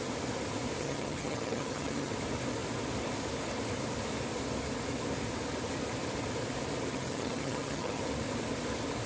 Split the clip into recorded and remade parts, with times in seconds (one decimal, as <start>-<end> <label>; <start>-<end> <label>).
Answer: 0.0-0.8 recorded; 0.8-2.1 remade; 2.1-6.9 recorded; 6.9-8.0 remade; 8.0-9.1 recorded